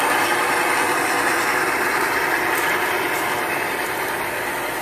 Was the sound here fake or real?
real